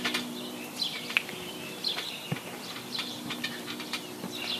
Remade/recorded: remade